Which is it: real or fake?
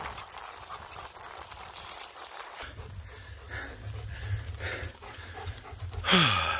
real